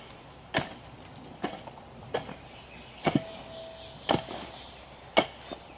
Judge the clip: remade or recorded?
recorded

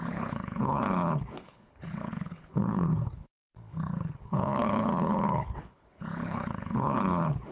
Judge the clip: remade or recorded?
remade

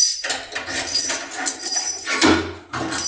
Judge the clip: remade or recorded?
recorded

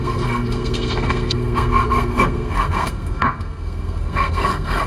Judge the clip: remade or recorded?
remade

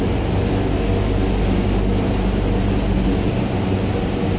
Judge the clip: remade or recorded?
recorded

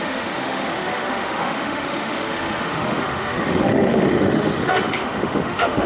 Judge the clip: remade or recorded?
remade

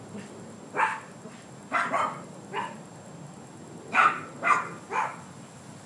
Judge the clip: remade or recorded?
recorded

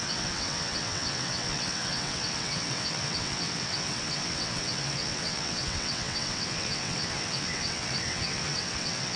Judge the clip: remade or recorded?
remade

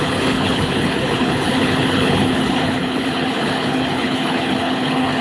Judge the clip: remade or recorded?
remade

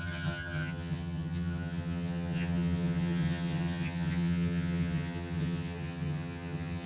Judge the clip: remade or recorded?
remade